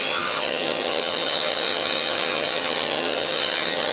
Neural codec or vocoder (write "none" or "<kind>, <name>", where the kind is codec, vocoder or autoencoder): vocoder, HiFi-GAN